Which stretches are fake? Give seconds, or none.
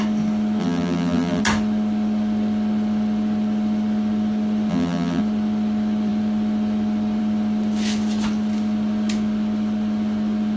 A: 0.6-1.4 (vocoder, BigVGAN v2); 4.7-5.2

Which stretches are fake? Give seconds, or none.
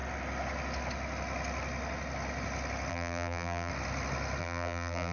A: 2.9-3.7 (vocoder, BigVGAN v2); 4.4-5.1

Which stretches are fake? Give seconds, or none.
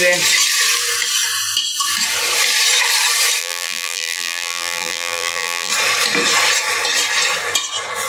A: 3.4-5.7 (vocoder, BigVGAN v2)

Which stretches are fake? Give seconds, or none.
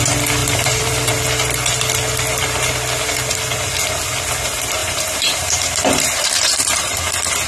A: 0.4-1.1 (vocoder, BigVGAN v2); 4.8-7.0